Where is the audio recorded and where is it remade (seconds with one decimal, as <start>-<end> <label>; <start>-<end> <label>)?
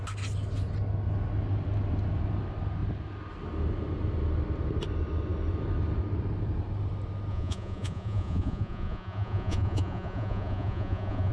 0.0-7.3 recorded; 7.3-11.3 remade